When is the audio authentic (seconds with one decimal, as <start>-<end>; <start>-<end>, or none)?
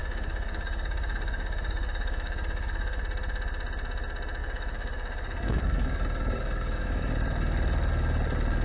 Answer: 3.0-4.4; 7.1-8.6